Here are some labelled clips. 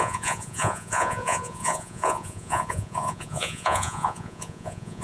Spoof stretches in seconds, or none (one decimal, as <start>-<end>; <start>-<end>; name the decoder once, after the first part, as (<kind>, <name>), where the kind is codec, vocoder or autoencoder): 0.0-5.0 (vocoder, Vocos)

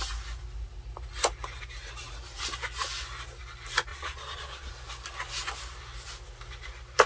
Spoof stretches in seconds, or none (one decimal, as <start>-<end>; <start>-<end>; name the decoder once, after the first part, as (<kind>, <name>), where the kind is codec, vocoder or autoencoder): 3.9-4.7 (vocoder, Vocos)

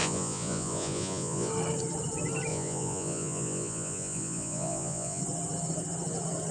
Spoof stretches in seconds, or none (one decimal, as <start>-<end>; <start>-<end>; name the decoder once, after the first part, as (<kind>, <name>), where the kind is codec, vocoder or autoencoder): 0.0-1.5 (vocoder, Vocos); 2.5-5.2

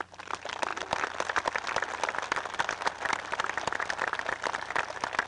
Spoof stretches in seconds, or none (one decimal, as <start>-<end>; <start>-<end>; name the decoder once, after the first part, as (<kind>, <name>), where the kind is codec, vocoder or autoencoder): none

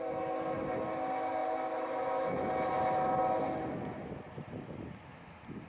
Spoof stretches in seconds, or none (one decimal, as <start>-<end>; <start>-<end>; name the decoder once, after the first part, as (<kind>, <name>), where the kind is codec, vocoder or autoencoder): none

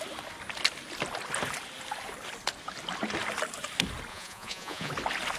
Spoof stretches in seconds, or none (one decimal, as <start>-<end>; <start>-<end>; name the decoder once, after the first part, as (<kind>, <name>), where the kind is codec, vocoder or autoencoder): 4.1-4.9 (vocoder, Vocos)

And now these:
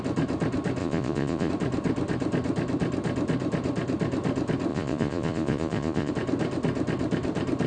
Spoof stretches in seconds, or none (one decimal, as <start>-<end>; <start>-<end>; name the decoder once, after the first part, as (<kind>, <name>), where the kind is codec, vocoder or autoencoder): 0.8-1.5 (vocoder, Vocos); 4.7-6.1

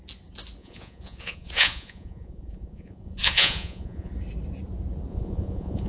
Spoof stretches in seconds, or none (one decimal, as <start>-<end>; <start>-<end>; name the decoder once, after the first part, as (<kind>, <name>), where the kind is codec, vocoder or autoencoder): 0.6-4.1 (vocoder, Vocos); 5.1-5.9